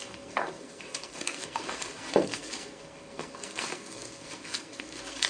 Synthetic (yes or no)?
yes